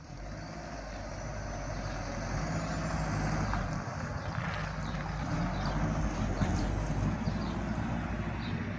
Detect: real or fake real